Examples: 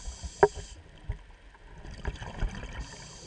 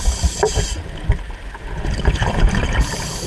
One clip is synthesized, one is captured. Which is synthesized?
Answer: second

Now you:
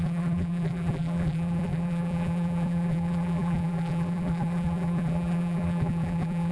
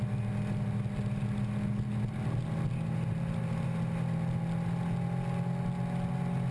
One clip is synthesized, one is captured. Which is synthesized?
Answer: first